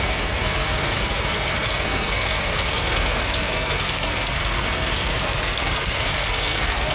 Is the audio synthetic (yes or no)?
yes